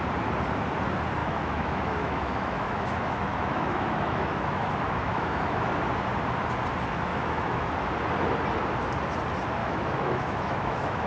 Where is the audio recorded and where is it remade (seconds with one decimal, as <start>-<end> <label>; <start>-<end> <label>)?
0.0-1.2 recorded; 1.2-5.7 remade; 5.7-7.1 recorded; 7.1-7.7 remade; 7.7-9.6 recorded; 9.6-11.1 remade